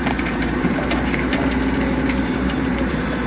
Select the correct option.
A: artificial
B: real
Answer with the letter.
A